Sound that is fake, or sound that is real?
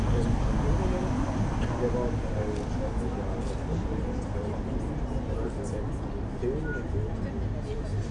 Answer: real